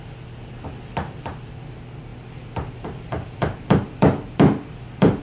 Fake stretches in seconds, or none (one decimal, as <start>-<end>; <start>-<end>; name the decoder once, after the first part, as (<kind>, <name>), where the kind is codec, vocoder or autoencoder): 2.1-5.2 (vocoder, BigVGAN v2)